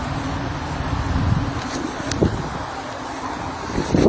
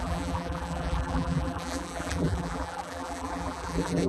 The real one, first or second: first